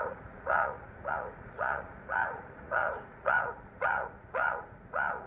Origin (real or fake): fake